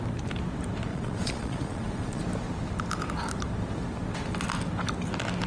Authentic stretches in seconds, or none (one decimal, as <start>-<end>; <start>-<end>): 0.0-0.9; 2.2-5.5